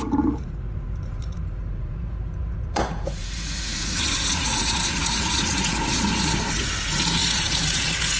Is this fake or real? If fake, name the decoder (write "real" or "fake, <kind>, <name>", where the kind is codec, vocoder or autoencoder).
fake, vocoder, Vocos